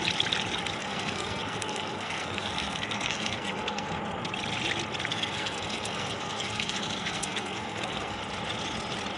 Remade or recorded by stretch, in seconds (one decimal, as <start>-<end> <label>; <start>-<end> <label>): 0.0-0.8 recorded; 0.8-4.0 remade; 4.0-5.1 recorded; 5.1-8.2 remade; 8.2-9.2 recorded